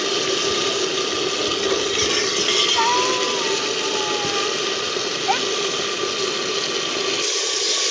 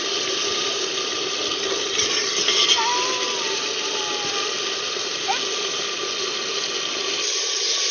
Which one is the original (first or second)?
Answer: first